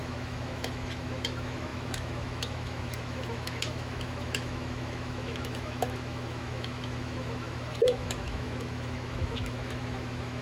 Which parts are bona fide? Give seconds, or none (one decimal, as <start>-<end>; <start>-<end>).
none